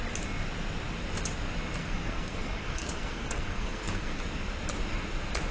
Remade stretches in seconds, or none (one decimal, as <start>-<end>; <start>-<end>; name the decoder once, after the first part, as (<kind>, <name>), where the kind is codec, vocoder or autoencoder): 1.8-4.2 (codec, SNAC)